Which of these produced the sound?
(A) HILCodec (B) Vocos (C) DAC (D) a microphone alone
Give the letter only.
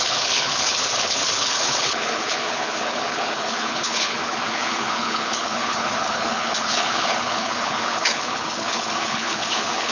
A